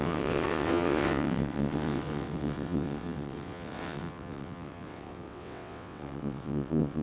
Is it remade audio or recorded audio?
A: remade